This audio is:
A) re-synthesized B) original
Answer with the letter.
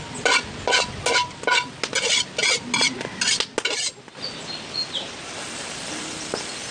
B